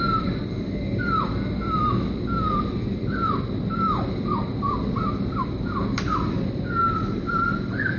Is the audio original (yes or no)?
yes